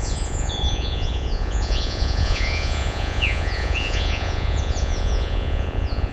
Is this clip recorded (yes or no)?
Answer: no